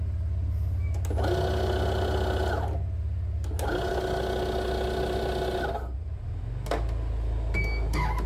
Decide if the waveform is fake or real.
real